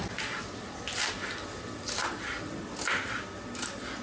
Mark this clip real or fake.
real